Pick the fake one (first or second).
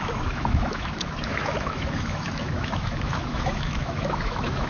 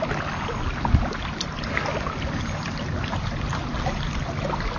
first